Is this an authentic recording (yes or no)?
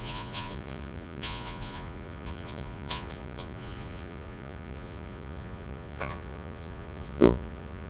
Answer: no